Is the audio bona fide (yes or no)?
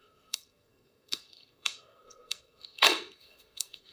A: no